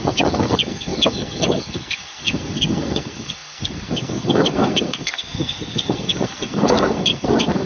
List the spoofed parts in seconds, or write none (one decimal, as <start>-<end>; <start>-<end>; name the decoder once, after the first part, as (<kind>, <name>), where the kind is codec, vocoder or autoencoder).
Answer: 0.0-7.7 (codec, SNAC)